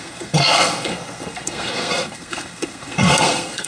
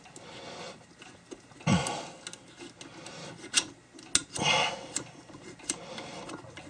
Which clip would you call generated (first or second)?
first